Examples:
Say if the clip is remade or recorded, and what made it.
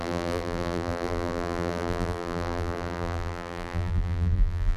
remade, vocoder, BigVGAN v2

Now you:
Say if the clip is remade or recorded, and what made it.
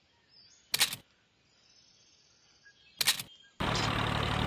recorded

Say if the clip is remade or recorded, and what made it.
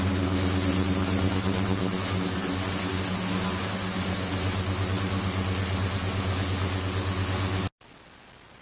recorded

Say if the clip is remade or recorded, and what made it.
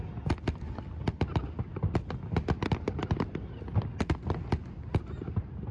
recorded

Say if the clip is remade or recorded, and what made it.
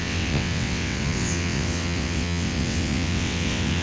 remade, vocoder, WaveNeXt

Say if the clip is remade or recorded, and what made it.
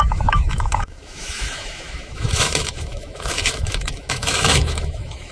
remade, autoencoder, DAC-VAE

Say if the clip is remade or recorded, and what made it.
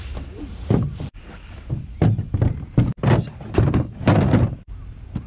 remade, vocoder, BigVGAN v2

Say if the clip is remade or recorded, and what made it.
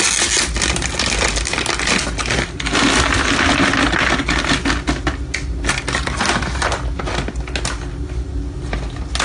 recorded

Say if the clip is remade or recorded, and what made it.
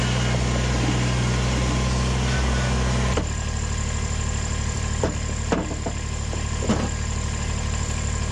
remade, vocoder, BigVGAN v2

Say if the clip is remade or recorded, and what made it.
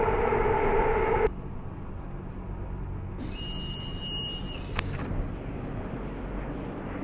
recorded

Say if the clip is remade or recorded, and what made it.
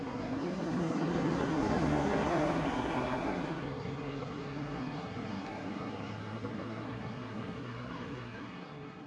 remade, codec, SNAC